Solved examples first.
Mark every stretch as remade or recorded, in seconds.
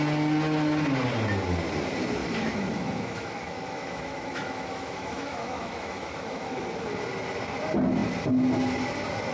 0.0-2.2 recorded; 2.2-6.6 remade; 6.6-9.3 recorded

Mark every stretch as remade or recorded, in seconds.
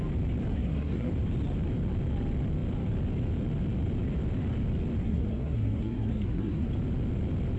0.0-0.5 recorded; 0.5-1.1 remade; 1.1-5.0 recorded; 5.0-6.7 remade; 6.7-7.6 recorded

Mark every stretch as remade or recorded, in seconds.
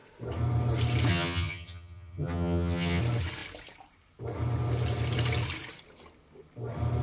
0.0-1.1 recorded; 1.1-3.0 remade; 3.0-7.0 recorded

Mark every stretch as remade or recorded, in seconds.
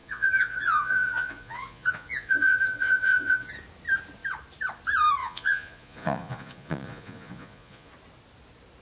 0.0-3.5 remade; 3.5-5.2 recorded; 5.2-7.9 remade; 7.9-8.8 recorded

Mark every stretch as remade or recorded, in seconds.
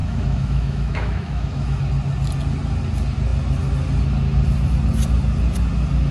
0.0-1.8 remade; 1.8-6.1 recorded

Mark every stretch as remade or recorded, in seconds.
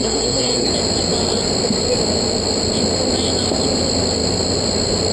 0.0-0.7 remade; 0.7-5.1 recorded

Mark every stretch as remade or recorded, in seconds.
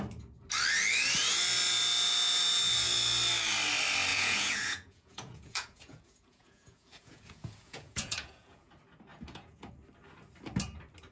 0.0-4.1 recorded; 4.1-8.7 remade; 8.7-9.1 recorded; 9.1-9.7 remade; 9.7-11.1 recorded